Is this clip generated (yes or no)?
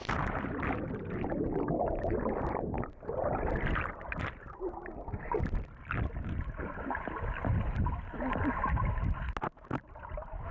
no